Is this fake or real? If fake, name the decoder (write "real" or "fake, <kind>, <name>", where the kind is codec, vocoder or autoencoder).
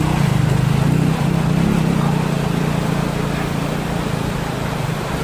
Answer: real